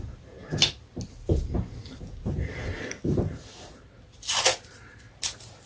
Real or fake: real